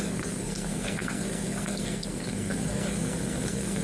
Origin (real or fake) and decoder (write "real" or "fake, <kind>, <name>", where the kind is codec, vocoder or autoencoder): fake, codec, SNAC